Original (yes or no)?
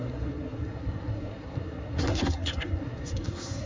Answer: no